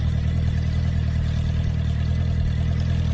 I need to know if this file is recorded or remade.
recorded